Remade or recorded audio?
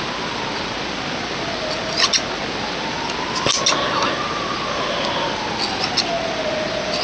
recorded